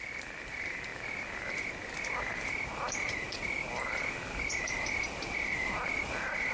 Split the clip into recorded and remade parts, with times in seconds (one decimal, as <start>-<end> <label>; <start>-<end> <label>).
0.0-6.5 recorded